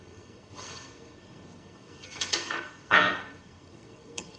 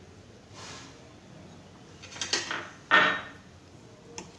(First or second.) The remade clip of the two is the first